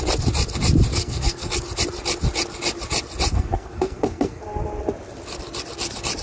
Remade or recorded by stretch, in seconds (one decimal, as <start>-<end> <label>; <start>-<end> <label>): 0.0-0.9 recorded; 0.9-1.6 remade; 1.6-3.3 recorded; 3.3-4.4 remade; 4.4-6.2 recorded